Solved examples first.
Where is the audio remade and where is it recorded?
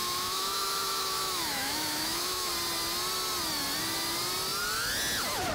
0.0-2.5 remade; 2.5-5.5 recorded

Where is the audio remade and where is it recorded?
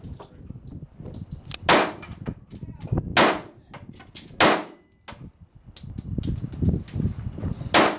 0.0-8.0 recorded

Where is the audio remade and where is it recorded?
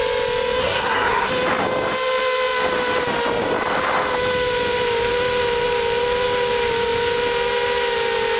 0.0-0.6 recorded; 0.6-1.3 remade; 1.3-8.4 recorded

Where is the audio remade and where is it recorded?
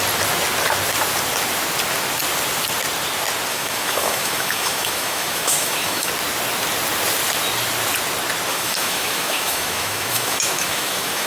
0.0-3.5 recorded; 3.5-6.1 remade; 6.1-8.5 recorded; 8.5-11.3 remade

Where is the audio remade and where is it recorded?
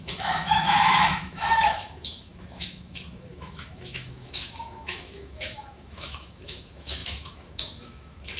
0.0-8.4 remade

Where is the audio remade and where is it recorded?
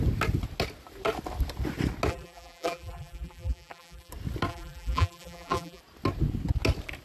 0.0-2.1 recorded; 2.1-4.1 remade; 4.1-4.5 recorded; 4.5-5.8 remade; 5.8-7.0 recorded